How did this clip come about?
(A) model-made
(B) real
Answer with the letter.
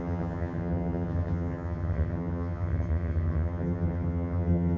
A